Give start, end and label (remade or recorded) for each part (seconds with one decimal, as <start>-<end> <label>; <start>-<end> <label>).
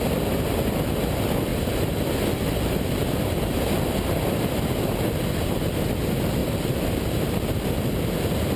0.0-6.4 recorded; 6.4-7.2 remade; 7.2-8.6 recorded